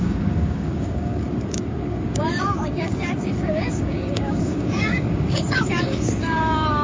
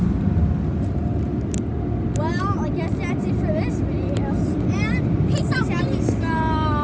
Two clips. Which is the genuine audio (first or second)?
second